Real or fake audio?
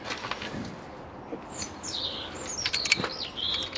real